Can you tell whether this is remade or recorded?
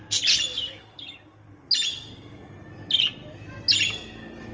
recorded